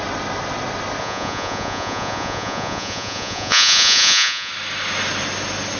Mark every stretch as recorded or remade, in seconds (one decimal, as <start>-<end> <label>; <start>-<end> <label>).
0.0-1.0 recorded; 1.0-4.5 remade; 4.5-5.8 recorded